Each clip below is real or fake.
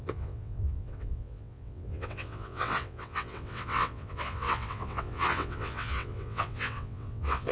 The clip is fake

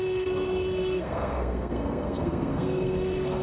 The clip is fake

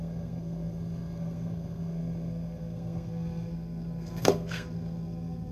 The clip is fake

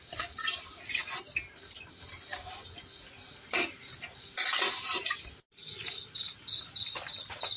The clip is real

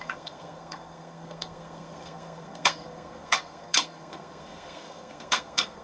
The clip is fake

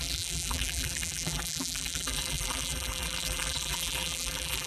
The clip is fake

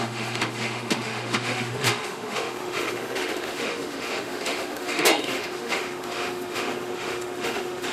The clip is fake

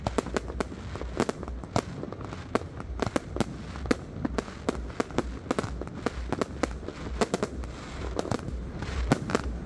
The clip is real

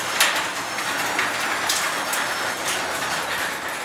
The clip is real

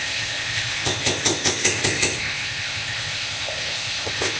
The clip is fake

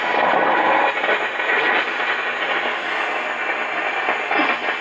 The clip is real